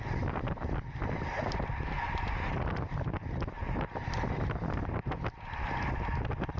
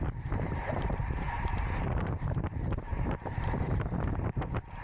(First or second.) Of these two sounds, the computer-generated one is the second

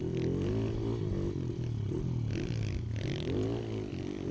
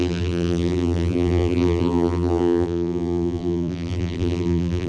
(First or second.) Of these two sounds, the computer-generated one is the second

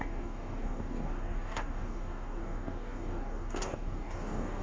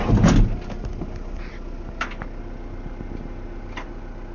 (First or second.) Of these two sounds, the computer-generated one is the first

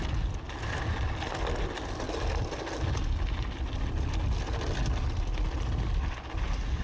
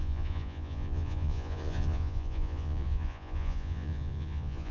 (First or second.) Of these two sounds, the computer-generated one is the second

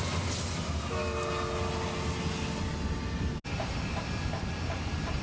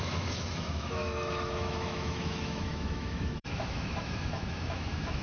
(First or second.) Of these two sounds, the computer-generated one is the second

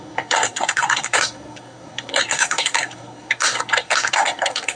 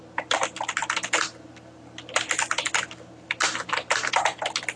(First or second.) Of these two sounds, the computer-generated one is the first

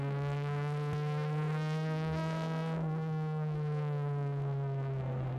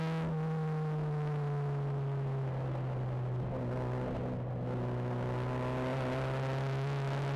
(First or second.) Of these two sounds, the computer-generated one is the first